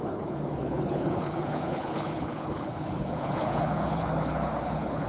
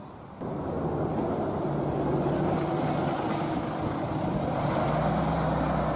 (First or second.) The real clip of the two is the second